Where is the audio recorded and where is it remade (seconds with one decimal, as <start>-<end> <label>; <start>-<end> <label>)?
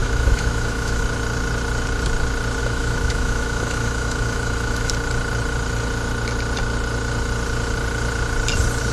0.0-1.0 remade; 1.0-2.6 recorded; 2.6-4.9 remade; 4.9-8.9 recorded